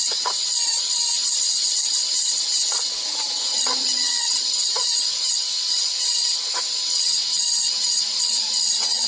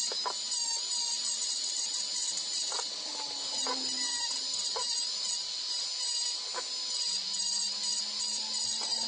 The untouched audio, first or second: second